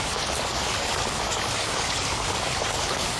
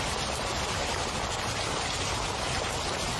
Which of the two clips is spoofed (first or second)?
first